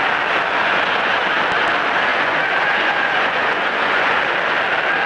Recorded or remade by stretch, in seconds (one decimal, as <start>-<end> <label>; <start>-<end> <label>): 0.0-0.6 recorded; 0.6-1.2 remade; 1.2-2.1 recorded; 2.1-4.2 remade; 4.2-5.1 recorded